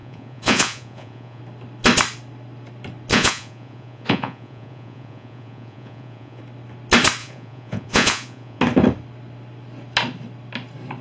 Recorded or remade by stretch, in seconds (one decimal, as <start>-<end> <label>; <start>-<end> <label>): 0.0-1.4 remade; 1.4-3.1 recorded; 3.1-6.4 remade; 6.4-7.2 recorded; 7.2-8.6 remade; 8.6-11.0 recorded